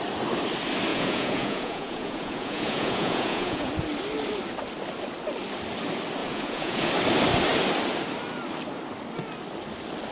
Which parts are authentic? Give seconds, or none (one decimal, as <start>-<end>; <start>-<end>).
0.0-0.9; 3.7-6.2; 6.9-10.1